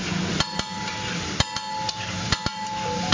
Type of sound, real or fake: real